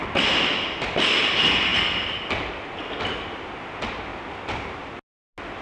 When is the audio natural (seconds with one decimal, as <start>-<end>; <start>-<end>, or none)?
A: 1.1-5.6